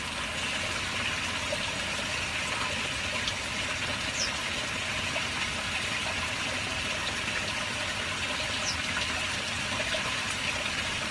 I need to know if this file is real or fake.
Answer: real